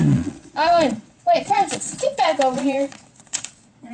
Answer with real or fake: fake